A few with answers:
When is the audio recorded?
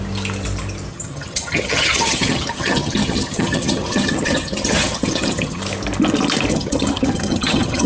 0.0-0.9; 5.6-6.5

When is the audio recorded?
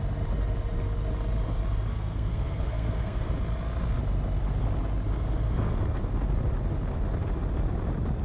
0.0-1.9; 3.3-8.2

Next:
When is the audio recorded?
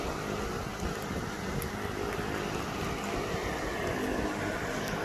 0.0-5.0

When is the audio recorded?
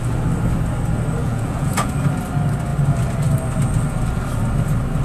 0.0-1.2; 1.9-5.0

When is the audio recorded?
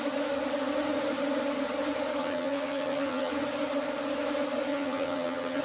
0.0-2.2; 3.3-4.7